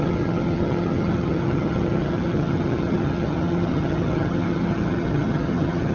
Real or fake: fake